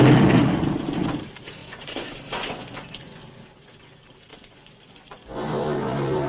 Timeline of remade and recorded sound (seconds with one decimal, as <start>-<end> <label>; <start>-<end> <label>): 0.0-1.6 recorded; 1.6-3.2 remade; 3.2-4.3 recorded; 4.3-6.3 remade